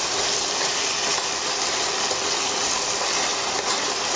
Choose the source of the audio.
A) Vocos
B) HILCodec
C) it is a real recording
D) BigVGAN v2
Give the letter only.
C